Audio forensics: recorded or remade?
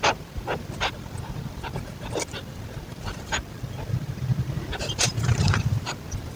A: remade